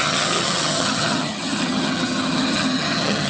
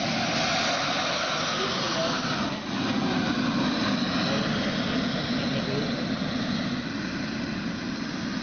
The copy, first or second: first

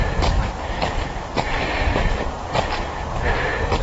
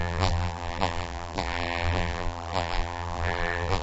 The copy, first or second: second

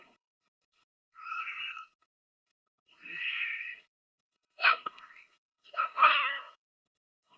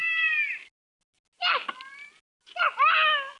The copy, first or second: first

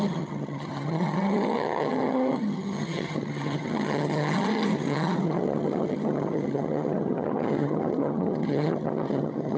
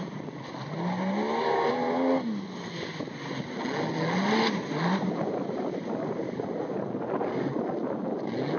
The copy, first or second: first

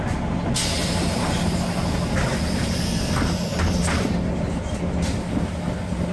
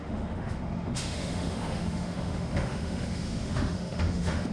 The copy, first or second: second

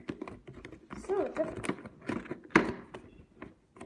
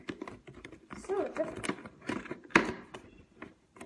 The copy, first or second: second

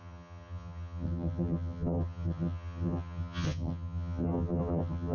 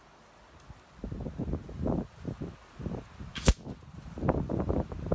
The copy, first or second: first